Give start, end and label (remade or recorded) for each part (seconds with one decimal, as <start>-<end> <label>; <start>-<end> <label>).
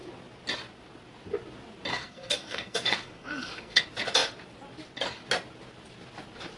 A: 0.0-1.9 recorded; 1.9-3.8 remade; 3.8-6.6 recorded